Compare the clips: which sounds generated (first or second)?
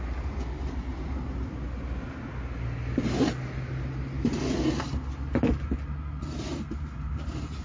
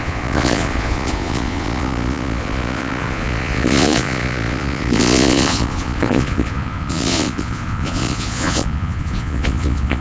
second